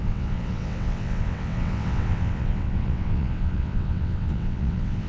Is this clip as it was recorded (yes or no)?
no